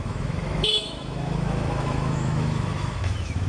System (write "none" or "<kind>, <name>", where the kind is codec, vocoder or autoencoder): autoencoder, DAC-VAE